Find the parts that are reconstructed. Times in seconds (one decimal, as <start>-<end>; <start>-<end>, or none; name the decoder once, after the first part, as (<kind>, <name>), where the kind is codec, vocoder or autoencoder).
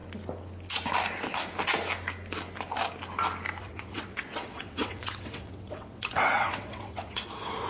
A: 3.6-7.7 (vocoder, WaveNeXt)